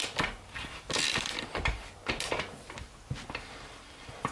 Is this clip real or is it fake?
real